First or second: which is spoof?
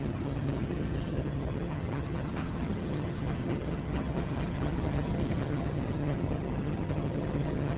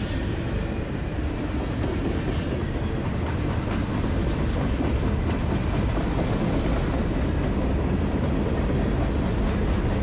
first